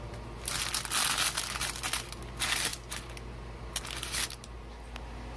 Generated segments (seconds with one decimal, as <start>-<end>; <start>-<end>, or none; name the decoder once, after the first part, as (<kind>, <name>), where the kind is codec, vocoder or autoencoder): none